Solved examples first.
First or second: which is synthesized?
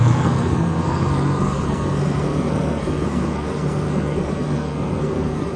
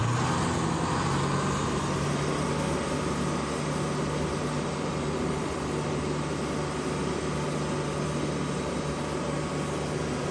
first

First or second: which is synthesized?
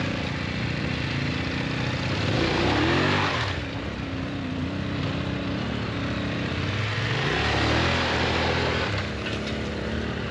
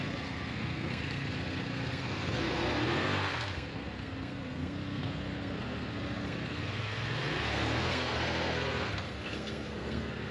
second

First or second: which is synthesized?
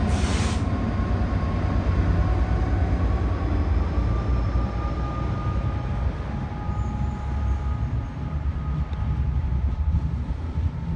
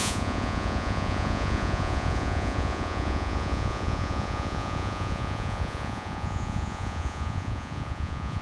second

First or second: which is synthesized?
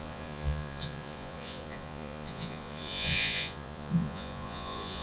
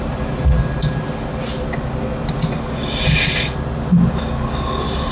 first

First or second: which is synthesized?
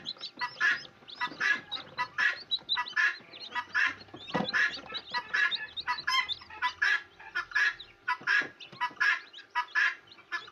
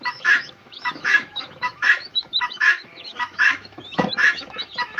second